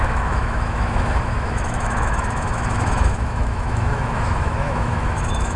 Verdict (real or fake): fake